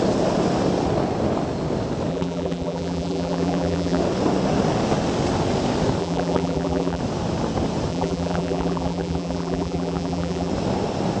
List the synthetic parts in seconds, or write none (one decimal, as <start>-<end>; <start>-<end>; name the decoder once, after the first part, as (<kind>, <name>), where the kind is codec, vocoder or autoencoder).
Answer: 2.1-4.0 (vocoder, BigVGAN v2); 6.0-7.0; 7.9-10.5